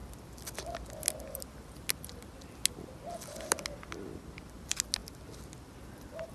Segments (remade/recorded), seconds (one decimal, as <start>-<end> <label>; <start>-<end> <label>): 0.0-6.3 recorded

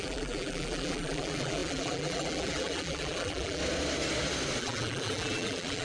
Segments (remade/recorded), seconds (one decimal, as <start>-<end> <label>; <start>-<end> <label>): 0.0-3.6 remade; 3.6-4.6 recorded; 4.6-5.8 remade

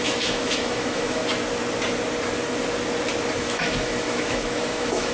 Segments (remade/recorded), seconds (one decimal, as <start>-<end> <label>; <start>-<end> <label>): 0.0-1.2 remade; 1.2-3.3 recorded; 3.3-5.1 remade

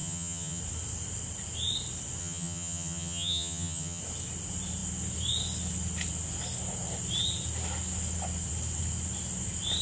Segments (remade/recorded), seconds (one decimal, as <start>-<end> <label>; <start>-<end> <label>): 0.0-0.6 remade; 0.6-2.2 recorded; 2.2-4.0 remade; 4.0-9.8 recorded